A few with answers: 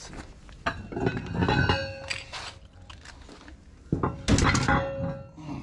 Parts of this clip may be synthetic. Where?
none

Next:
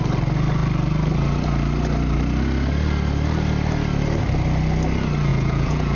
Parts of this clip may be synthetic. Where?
5.3-6.0 (vocoder, Vocos)

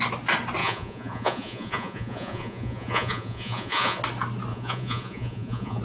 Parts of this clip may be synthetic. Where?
0.6-4.0 (vocoder, Vocos); 4.5-5.8

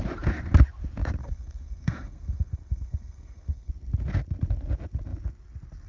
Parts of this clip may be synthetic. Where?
1.2-3.7 (codec, SNAC)